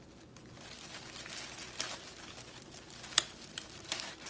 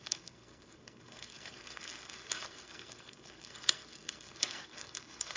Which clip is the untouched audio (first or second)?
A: first